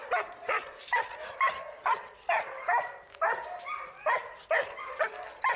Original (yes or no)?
yes